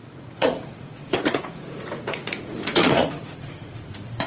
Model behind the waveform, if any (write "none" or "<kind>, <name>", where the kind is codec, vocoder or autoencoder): vocoder, Vocos